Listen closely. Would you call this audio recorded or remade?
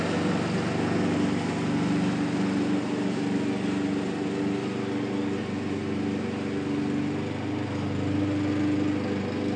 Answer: recorded